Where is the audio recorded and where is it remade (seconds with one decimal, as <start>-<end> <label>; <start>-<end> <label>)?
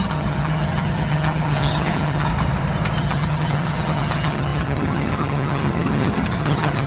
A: 0.0-2.3 remade; 2.3-3.0 recorded; 3.0-6.9 remade